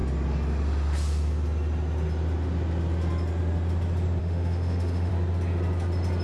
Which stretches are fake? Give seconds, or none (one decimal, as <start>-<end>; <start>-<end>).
4.2-5.1